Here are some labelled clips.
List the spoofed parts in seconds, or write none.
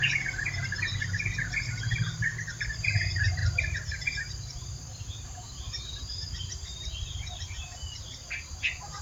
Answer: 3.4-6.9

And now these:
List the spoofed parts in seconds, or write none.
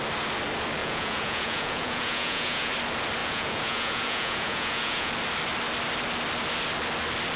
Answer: 0.8-2.7; 3.2-5.1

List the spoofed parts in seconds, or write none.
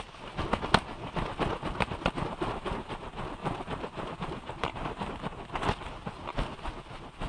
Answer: 3.4-5.1